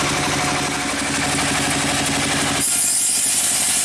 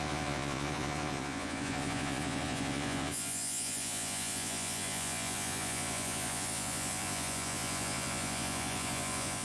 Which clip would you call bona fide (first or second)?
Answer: first